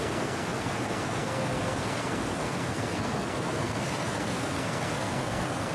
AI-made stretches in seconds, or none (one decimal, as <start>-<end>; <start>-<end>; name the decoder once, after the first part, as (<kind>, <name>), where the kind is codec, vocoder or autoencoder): 0.0-5.7 (codec, SNAC)